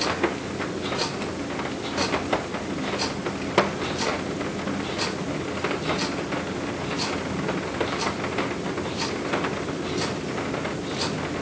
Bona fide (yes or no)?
yes